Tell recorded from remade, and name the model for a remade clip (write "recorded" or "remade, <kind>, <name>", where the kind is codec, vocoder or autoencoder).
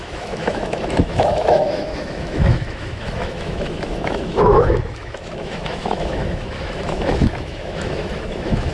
remade, autoencoder, DAC-VAE